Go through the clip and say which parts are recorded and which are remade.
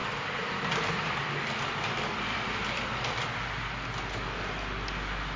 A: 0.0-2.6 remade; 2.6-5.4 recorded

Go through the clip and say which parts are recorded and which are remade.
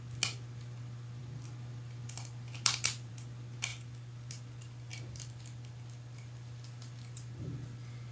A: 0.0-1.2 recorded; 1.2-3.1 remade; 3.1-4.9 recorded; 4.9-7.5 remade; 7.5-8.1 recorded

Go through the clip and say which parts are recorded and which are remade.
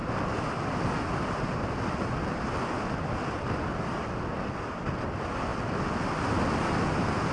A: 0.0-7.3 recorded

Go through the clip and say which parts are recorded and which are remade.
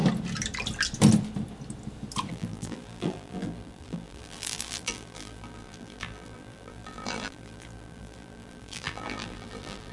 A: 0.0-2.3 recorded; 2.3-9.9 remade